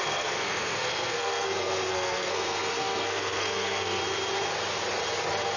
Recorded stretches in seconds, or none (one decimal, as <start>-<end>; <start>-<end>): 4.0-5.6